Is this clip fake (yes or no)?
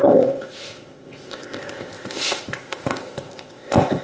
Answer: yes